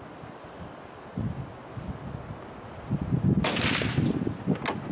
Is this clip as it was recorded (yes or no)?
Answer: yes